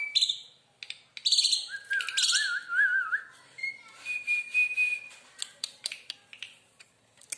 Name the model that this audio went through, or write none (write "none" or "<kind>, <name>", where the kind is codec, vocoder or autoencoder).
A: none